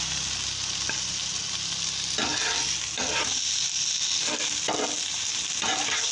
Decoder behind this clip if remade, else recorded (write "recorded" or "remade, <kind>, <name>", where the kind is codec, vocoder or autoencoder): recorded